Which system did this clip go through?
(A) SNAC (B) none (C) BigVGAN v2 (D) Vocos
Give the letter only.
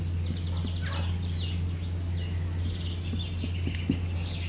B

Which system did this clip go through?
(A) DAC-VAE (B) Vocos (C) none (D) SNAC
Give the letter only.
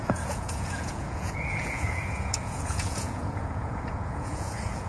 B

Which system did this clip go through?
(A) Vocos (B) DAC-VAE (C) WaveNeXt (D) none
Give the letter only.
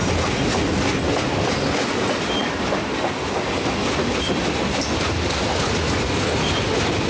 D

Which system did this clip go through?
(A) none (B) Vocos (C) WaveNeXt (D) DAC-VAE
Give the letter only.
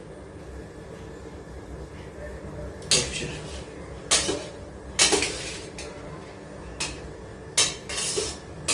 A